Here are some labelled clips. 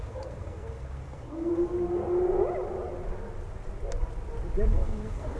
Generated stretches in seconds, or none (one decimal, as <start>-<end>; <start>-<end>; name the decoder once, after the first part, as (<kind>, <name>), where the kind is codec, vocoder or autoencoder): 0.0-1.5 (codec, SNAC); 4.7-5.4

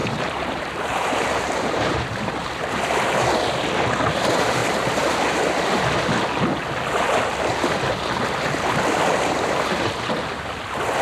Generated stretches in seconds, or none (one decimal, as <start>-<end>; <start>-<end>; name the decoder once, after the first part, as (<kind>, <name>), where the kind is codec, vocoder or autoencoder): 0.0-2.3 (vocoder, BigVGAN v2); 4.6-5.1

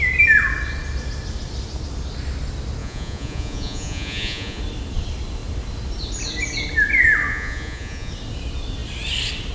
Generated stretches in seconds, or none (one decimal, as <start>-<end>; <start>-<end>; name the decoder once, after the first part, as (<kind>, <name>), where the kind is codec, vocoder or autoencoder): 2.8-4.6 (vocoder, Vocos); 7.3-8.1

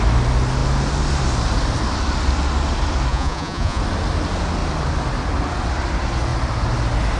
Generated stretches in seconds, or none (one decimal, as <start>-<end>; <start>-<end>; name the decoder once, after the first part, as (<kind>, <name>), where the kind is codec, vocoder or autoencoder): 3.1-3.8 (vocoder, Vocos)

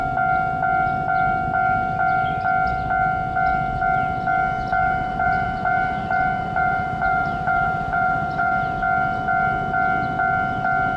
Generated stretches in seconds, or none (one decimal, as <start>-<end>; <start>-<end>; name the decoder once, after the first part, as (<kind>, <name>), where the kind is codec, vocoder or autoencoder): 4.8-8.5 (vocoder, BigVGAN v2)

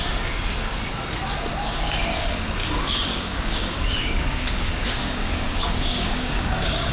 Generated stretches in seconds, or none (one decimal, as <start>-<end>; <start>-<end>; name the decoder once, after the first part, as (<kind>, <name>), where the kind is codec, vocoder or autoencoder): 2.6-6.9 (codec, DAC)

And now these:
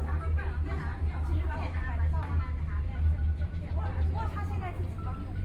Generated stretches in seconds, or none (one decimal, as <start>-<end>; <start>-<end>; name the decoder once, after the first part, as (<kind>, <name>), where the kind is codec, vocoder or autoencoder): 0.9-4.1 (vocoder, BigVGAN v2)